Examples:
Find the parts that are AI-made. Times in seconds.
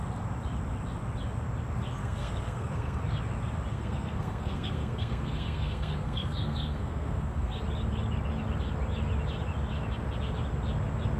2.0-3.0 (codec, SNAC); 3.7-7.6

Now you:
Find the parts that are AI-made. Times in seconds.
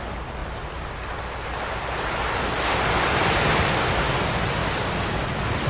none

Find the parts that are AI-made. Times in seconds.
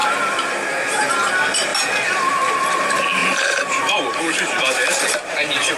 0.0-0.8 (vocoder, BigVGAN v2); 3.2-5.8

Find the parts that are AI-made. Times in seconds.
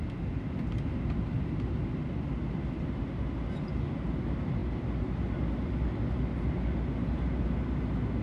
none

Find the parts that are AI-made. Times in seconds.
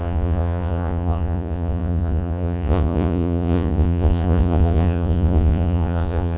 0.0-6.4 (vocoder, Vocos)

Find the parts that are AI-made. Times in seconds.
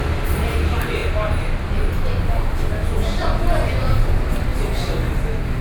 none